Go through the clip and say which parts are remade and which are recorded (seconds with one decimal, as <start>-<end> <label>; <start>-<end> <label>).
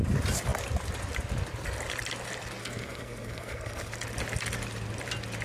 0.0-2.6 recorded; 2.6-3.9 remade; 3.9-5.4 recorded